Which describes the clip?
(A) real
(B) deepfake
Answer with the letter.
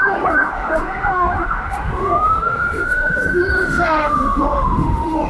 B